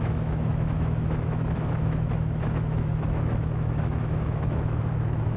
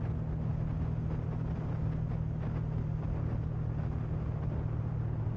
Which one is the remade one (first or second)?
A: first